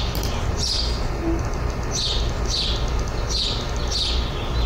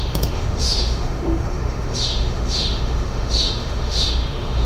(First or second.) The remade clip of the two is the second